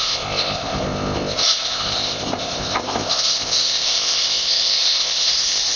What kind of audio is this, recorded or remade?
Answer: remade